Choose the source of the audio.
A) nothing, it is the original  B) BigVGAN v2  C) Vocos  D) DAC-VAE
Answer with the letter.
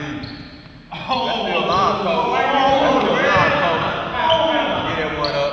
A